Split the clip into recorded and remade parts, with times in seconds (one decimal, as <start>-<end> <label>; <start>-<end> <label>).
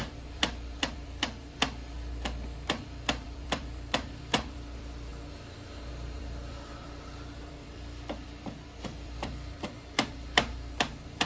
0.0-5.1 remade; 5.1-5.9 recorded; 5.9-11.3 remade